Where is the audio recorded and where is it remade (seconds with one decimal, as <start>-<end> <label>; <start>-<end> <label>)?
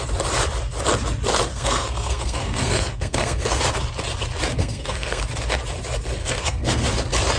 0.0-1.5 recorded; 1.5-3.6 remade; 3.6-4.6 recorded; 4.6-5.2 remade; 5.2-6.2 recorded; 6.2-6.8 remade; 6.8-7.4 recorded